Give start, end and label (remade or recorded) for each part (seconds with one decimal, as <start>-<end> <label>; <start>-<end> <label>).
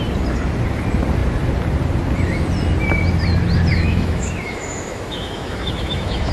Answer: 0.0-3.7 recorded; 3.7-6.3 remade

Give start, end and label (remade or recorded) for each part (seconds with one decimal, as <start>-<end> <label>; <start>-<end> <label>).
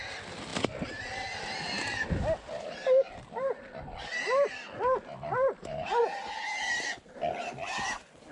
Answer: 0.0-8.3 recorded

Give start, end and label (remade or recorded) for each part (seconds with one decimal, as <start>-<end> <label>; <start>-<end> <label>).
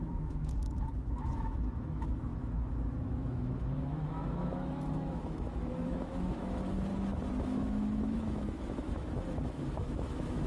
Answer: 0.0-6.9 remade; 6.9-7.4 recorded; 7.4-10.5 remade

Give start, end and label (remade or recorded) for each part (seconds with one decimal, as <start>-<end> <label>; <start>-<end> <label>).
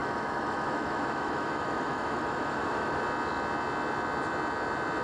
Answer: 0.0-3.0 remade; 3.0-5.0 recorded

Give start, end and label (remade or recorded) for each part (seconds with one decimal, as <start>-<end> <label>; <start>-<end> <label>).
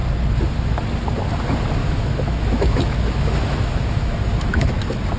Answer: 0.0-1.8 recorded; 1.8-4.7 remade; 4.7-5.2 recorded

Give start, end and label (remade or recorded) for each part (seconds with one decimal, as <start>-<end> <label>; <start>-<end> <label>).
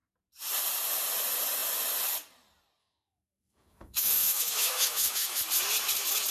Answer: 0.0-2.8 recorded; 2.8-5.4 remade; 5.4-6.3 recorded